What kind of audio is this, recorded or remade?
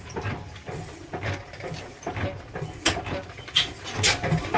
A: recorded